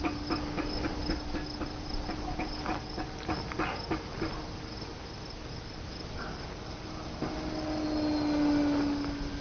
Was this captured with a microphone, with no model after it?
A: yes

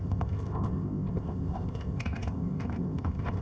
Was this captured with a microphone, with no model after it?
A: no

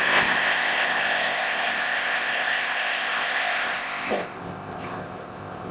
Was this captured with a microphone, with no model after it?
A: no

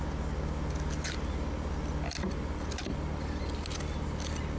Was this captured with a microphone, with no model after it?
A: yes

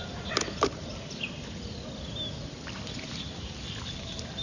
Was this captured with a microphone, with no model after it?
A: yes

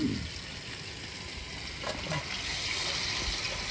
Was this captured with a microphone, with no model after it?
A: yes